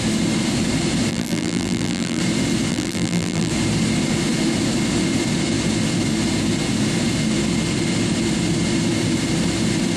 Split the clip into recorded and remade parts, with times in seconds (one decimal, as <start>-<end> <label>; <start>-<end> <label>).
0.0-1.1 recorded; 1.1-2.2 remade; 2.2-2.7 recorded; 2.7-3.5 remade; 3.5-10.0 recorded